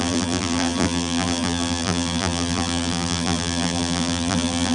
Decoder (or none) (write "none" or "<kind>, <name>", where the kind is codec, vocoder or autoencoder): vocoder, BigVGAN v2